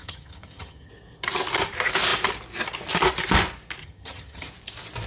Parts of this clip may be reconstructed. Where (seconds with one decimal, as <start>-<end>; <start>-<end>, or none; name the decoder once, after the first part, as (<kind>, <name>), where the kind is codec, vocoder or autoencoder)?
0.0-0.9 (vocoder, HiFi-GAN); 3.8-4.5